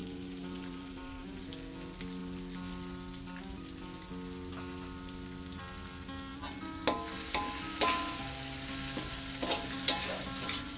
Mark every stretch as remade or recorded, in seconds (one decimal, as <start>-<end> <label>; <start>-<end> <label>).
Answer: 0.0-1.4 remade; 1.4-10.8 recorded

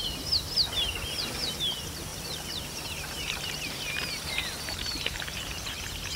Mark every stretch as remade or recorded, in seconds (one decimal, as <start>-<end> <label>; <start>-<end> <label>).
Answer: 0.0-2.1 recorded; 2.1-5.8 remade; 5.8-6.2 recorded

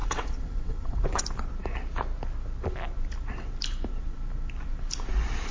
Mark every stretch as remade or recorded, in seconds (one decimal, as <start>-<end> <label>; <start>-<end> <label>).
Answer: 0.0-1.2 remade; 1.2-5.5 recorded